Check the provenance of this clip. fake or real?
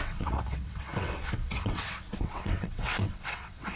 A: fake